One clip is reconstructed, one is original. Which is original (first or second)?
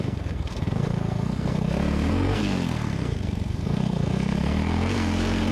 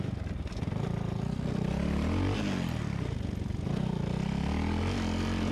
second